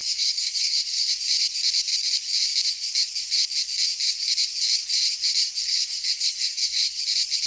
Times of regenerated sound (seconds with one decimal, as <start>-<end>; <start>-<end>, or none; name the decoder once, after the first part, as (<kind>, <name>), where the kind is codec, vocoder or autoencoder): 0.0-1.1 (codec, SNAC); 5.6-7.0